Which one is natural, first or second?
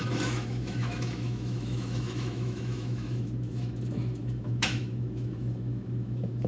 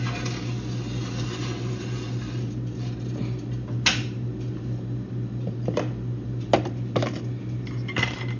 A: second